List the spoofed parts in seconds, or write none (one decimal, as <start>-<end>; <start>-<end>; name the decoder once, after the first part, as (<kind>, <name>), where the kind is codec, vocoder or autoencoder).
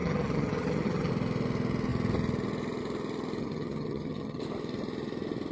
0.0-1.1 (vocoder, HiFi-GAN); 3.4-4.4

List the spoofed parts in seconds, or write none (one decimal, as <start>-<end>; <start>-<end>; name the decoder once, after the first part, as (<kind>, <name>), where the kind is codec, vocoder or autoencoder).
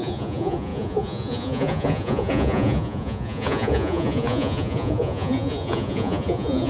0.0-6.7 (vocoder, Vocos)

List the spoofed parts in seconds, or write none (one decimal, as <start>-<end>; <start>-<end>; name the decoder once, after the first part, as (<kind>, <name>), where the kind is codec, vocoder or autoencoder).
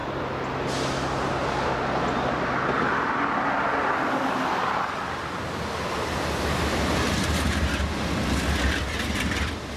3.8-5.2 (vocoder, BigVGAN v2)